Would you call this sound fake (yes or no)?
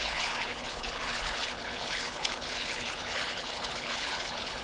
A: yes